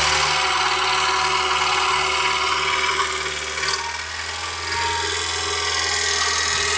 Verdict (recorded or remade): recorded